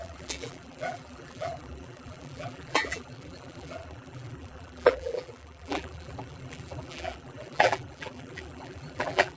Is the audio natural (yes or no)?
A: no